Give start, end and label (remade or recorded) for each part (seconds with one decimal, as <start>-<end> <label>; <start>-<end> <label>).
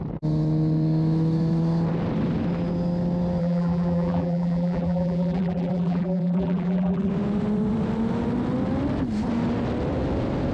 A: 0.0-3.4 recorded; 3.4-7.1 remade; 7.1-10.5 recorded